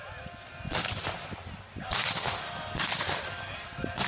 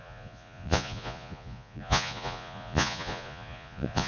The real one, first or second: first